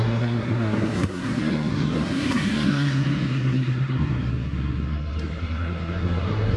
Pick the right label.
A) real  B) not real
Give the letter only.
B